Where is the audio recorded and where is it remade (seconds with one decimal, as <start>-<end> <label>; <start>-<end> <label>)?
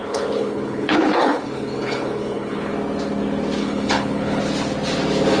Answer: 0.0-2.7 remade; 2.7-3.6 recorded; 3.6-4.4 remade; 4.4-5.4 recorded